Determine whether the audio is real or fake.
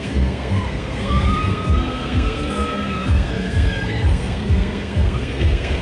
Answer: fake